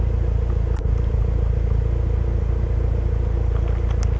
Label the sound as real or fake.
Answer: real